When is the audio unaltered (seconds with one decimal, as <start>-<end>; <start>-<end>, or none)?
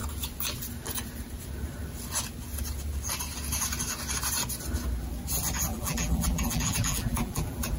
0.0-5.7